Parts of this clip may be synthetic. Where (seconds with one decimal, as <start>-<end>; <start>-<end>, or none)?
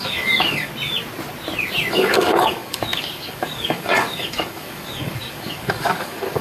0.0-0.7; 1.9-6.4